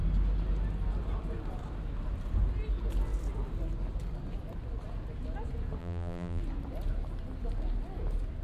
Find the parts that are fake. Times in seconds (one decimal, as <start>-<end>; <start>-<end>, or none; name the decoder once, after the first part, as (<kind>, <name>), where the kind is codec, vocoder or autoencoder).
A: 5.8-6.4 (vocoder, BigVGAN v2)